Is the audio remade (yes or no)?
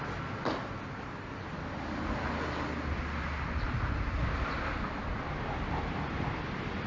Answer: no